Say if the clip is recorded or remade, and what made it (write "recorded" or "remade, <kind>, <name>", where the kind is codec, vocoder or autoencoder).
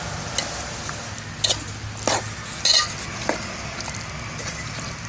recorded